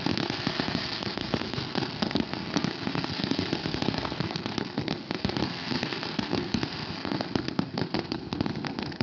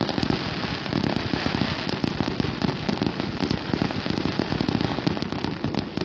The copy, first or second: first